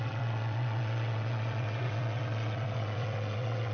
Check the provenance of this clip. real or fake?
fake